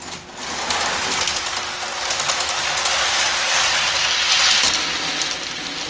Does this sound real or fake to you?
real